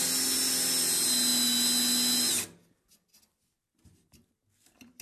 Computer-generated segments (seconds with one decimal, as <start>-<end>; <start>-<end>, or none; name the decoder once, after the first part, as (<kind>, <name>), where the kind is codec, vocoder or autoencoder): none